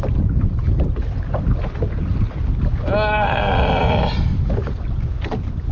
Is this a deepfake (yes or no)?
no